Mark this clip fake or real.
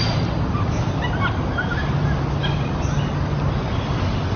real